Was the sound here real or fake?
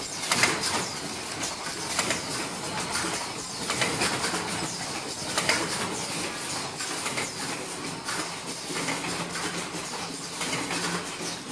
real